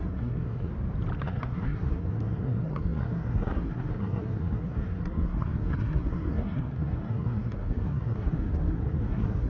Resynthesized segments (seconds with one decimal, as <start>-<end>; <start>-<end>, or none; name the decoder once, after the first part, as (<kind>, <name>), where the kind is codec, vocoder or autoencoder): 0.0-0.7 (codec, SNAC); 1.2-9.5